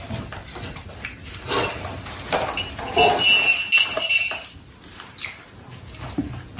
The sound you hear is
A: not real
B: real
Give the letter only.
B